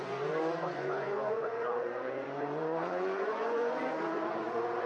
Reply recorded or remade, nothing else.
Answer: remade